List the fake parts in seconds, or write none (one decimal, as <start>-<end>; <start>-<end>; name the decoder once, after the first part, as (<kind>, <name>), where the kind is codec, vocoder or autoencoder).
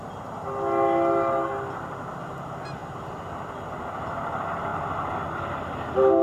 none